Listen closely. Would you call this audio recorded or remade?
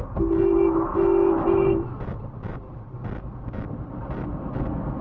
recorded